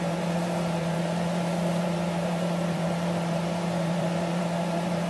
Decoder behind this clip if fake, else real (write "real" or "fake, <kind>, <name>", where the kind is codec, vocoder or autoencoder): fake, vocoder, BigVGAN v2